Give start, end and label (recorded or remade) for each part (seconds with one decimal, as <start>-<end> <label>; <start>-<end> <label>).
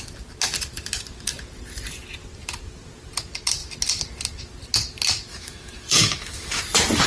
0.0-5.3 recorded; 5.3-6.6 remade; 6.6-7.1 recorded